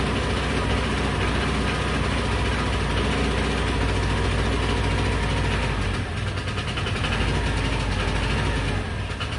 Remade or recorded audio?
recorded